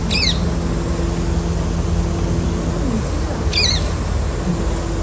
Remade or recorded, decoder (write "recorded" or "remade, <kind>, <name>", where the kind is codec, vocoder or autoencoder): recorded